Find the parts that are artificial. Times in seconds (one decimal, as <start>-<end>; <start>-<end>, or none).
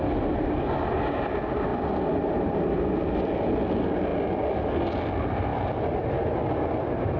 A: none